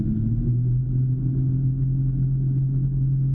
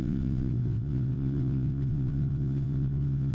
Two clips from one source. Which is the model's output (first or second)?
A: second